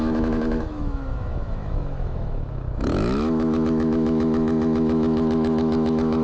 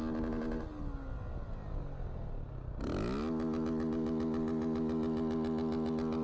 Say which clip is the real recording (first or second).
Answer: second